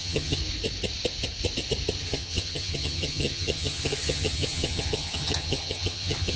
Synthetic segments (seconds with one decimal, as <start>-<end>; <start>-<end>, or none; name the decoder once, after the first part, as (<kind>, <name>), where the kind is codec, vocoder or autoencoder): 0.0-0.4 (vocoder, HiFi-GAN); 2.0-6.4